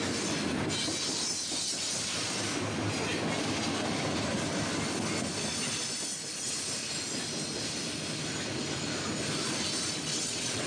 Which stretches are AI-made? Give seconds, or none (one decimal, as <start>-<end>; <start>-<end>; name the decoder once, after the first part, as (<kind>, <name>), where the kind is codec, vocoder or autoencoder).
10.1-10.7 (vocoder, WaveNeXt)